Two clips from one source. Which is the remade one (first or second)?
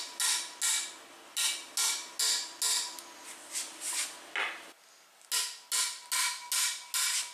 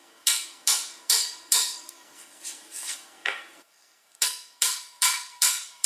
second